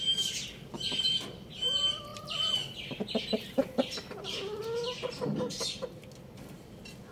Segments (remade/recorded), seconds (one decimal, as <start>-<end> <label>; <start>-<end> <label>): 0.0-7.1 recorded